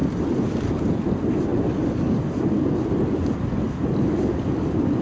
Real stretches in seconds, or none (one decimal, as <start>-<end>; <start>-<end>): 0.0-5.0

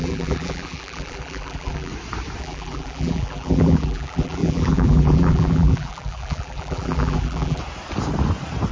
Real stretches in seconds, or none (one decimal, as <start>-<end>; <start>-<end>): 1.9-2.4; 7.6-8.7